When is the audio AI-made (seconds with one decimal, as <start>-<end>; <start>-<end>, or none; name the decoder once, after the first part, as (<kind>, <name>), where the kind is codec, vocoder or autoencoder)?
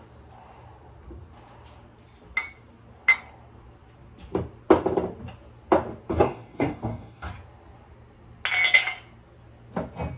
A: 6.1-7.3 (codec, DAC)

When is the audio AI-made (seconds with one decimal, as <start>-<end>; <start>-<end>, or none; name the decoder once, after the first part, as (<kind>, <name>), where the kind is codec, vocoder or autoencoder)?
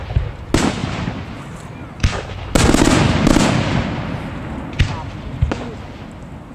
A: none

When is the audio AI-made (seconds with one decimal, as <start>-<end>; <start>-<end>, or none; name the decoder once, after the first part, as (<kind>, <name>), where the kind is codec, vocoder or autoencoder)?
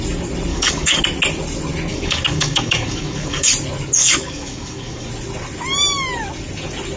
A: 0.5-1.0 (codec, DAC); 1.9-3.5; 4.0-5.1